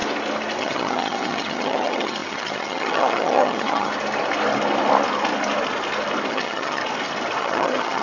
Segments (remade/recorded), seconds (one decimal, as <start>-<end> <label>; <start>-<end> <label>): 0.0-0.6 recorded; 0.6-3.9 remade; 3.9-6.3 recorded; 6.3-6.8 remade; 6.8-7.4 recorded; 7.4-8.0 remade